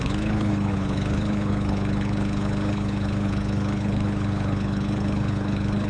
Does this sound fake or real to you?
fake